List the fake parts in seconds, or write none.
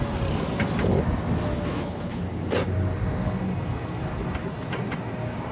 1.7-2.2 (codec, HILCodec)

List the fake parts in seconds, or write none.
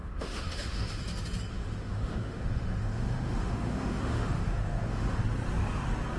0.0-1.0 (autoencoder, DAC-VAE); 1.5-5.2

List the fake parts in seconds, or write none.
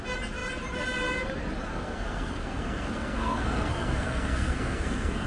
1.7-5.3 (codec, SNAC)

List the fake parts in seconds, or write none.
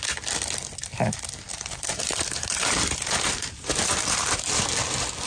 1.5-4.7 (vocoder, BigVGAN v2)